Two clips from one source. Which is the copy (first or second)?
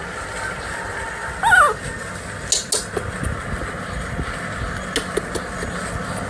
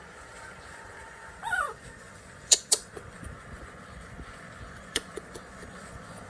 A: second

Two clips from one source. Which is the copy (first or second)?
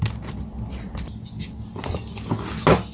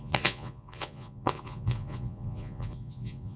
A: second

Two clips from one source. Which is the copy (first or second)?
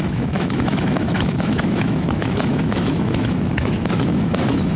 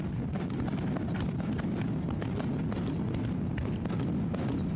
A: first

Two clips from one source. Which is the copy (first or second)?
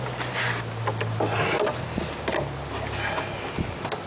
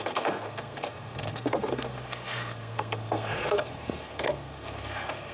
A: second